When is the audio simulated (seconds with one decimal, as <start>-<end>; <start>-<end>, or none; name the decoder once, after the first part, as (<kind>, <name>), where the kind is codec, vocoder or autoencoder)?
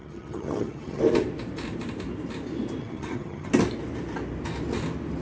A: 0.0-1.0 (vocoder, HiFi-GAN); 2.8-3.5